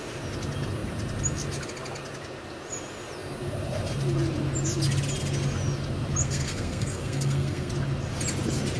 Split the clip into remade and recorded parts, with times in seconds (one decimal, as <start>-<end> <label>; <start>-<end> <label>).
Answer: 0.0-6.2 recorded; 6.2-7.7 remade; 7.7-8.8 recorded